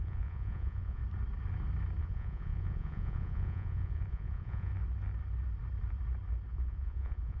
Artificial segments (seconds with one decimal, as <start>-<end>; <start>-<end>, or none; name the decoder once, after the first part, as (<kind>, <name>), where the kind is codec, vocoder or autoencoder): 0.0-1.0 (vocoder, Vocos); 2.0-4.7; 6.5-7.4